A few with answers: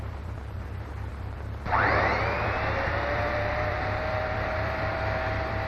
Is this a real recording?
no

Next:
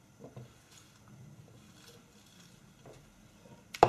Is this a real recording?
yes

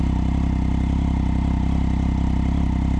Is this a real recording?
yes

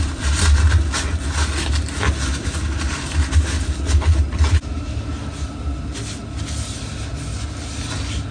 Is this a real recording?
yes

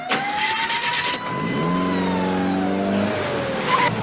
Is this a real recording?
yes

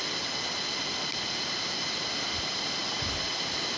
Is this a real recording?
yes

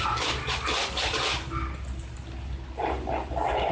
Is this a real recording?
no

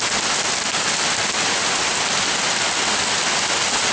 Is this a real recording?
yes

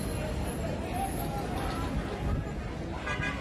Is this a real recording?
yes